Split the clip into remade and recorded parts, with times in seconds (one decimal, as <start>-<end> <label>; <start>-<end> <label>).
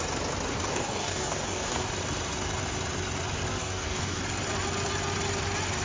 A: 0.0-0.5 recorded; 0.5-1.9 remade; 1.9-3.6 recorded; 3.6-4.2 remade; 4.2-5.8 recorded